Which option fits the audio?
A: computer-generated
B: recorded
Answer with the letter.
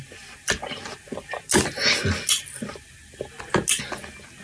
B